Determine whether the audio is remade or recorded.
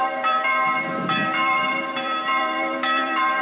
remade